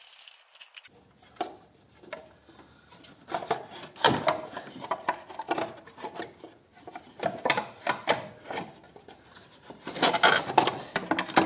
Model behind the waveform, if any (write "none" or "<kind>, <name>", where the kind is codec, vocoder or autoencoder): none